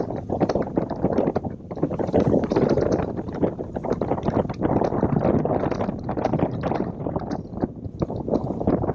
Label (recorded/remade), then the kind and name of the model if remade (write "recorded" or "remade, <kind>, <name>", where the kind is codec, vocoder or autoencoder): recorded